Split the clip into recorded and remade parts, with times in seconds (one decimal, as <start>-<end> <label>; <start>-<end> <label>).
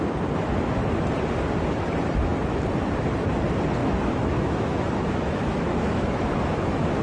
0.0-3.8 recorded; 3.8-7.0 remade